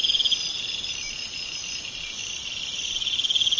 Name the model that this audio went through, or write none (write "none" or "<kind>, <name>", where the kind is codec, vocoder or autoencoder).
none